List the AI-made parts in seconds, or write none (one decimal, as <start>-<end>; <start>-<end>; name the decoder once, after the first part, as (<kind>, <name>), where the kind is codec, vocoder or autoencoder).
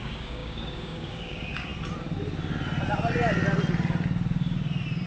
0.0-1.7 (codec, DAC)